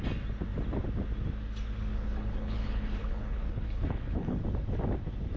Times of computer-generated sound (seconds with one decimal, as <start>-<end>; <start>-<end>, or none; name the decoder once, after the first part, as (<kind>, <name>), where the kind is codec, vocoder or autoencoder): 1.9-4.4 (codec, HILCodec)